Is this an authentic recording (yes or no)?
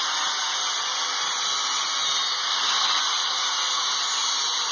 yes